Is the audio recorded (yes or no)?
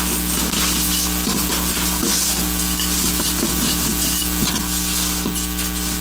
yes